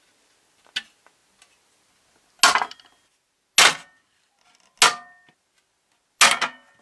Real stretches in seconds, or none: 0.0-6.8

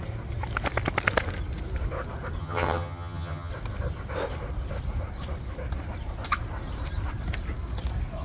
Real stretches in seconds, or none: 0.0-2.4; 3.5-8.2

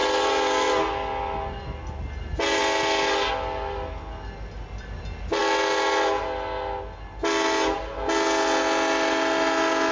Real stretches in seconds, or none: 0.0-9.9

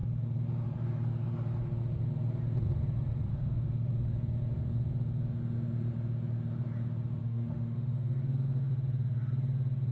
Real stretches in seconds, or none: 0.0-3.3; 3.9-7.2; 8.2-9.9

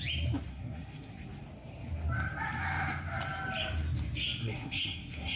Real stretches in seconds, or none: 0.0-0.5; 1.1-4.4

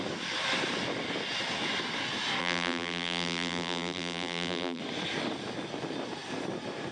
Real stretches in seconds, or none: 0.0-2.4; 4.8-6.9